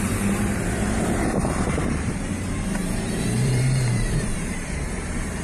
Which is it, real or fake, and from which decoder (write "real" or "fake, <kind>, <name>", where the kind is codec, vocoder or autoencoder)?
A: fake, vocoder, BigVGAN v2